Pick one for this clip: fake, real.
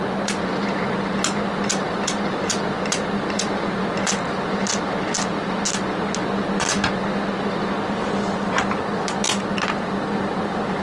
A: real